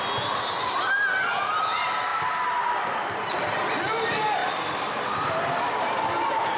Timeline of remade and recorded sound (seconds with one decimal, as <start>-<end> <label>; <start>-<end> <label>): 0.0-2.1 recorded; 2.1-4.0 remade; 4.0-4.4 recorded; 4.4-6.6 remade